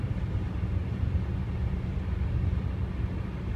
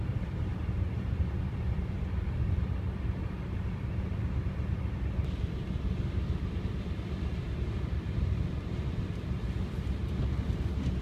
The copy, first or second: second